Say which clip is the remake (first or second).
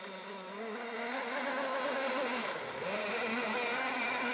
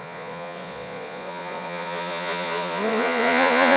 second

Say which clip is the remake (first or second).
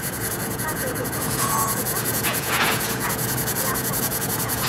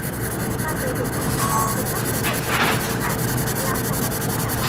first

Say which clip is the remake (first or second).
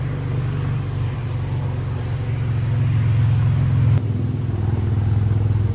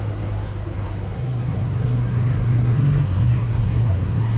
second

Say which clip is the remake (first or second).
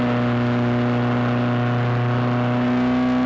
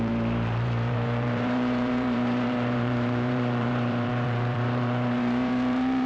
second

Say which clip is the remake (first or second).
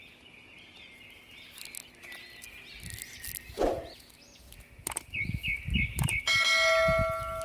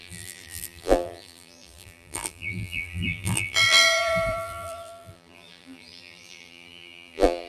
second